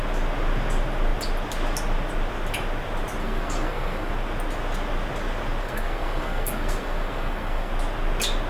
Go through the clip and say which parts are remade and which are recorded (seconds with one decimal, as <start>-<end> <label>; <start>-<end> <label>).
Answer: 0.0-3.2 recorded; 3.2-4.1 remade; 4.1-5.6 recorded; 5.6-7.7 remade; 7.7-8.5 recorded